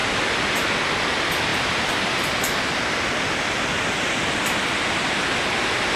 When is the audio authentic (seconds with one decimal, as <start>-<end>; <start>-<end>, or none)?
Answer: 0.0-1.5; 2.7-6.0